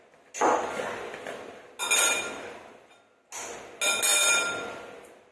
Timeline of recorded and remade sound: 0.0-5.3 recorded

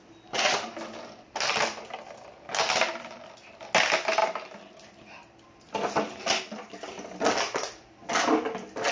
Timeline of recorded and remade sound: 0.0-8.9 recorded

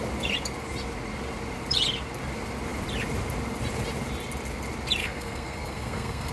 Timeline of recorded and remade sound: 0.0-5.0 recorded; 5.0-6.3 remade

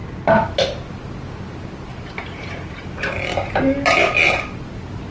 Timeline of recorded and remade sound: 0.0-1.9 recorded; 1.9-2.9 remade; 2.9-5.1 recorded